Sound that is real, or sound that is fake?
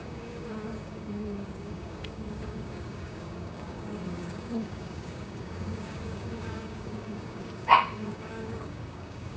fake